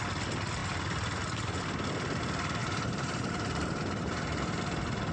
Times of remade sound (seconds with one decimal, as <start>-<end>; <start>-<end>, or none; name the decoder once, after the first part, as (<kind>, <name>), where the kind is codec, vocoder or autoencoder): 2.6-4.6 (vocoder, BigVGAN v2)